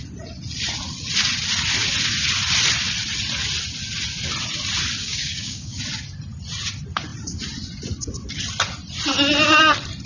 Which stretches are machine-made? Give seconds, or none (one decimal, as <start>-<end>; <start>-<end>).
5.0-5.8